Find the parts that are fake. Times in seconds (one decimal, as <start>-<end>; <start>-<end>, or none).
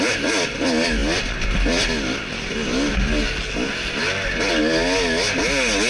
none